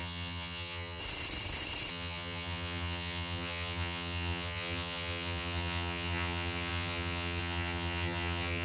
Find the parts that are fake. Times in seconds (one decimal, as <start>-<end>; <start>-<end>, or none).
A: 0.0-1.0; 1.9-8.6